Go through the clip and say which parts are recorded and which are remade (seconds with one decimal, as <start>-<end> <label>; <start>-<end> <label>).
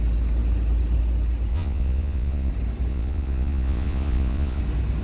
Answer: 0.0-1.5 recorded; 1.5-2.5 remade; 2.5-2.9 recorded; 2.9-4.6 remade; 4.6-5.0 recorded